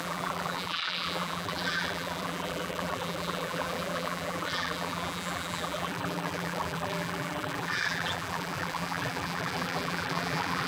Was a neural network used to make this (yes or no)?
yes